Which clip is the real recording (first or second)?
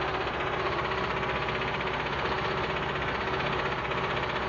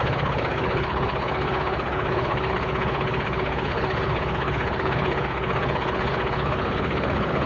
first